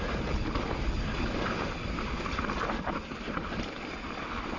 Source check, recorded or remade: recorded